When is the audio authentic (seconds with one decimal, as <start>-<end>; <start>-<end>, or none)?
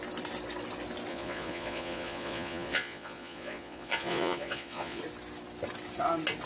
0.0-1.1; 5.0-6.5